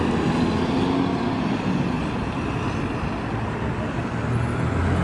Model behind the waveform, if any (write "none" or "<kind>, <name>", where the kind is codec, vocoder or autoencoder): none